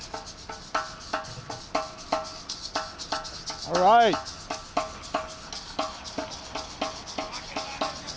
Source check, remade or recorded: recorded